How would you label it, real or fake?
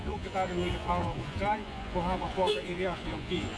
fake